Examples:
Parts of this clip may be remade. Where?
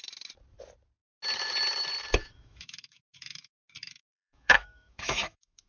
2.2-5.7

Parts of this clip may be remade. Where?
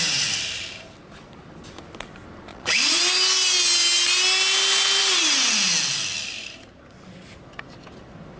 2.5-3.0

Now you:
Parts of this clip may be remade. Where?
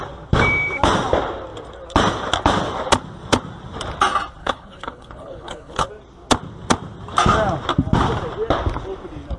4.4-5.9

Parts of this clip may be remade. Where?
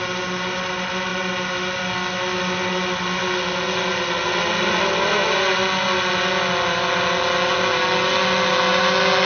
none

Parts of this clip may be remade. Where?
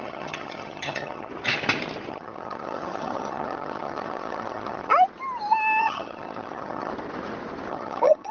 0.0-1.3; 2.1-4.9; 5.8-6.9; 7.7-8.3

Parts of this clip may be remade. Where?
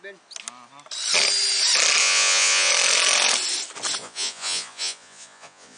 2.0-2.7; 4.0-5.8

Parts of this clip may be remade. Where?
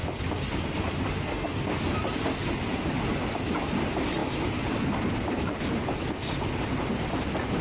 1.3-1.8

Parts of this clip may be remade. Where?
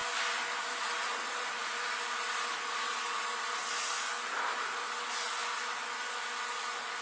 0.0-3.6; 5.4-6.3